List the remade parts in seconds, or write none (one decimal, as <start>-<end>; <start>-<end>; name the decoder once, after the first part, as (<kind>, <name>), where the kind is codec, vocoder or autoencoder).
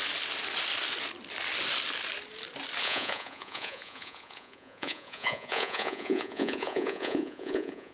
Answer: 2.8-7.9 (vocoder, Vocos)